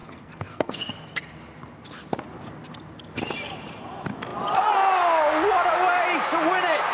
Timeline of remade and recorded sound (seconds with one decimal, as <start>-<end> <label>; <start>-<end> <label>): 0.0-1.2 remade; 1.2-6.9 recorded